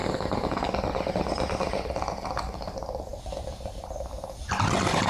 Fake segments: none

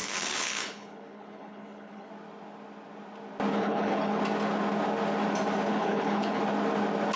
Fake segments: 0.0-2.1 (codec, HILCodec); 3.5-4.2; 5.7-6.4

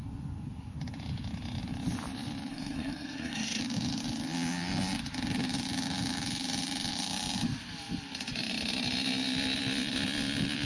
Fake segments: 2.5-3.6 (codec, SNAC)

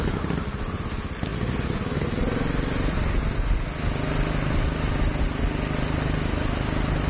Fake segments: none

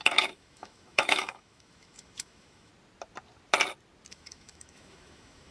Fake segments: 0.0-2.7 (autoencoder, DAC-VAE); 4.1-5.5